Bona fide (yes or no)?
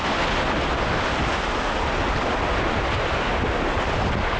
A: yes